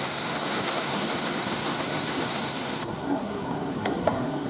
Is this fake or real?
fake